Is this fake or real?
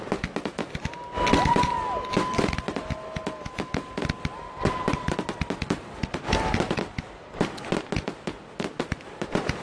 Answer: real